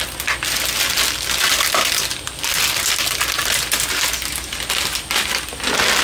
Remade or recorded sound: recorded